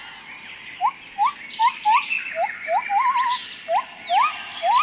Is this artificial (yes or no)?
no